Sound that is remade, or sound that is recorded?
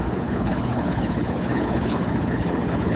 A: remade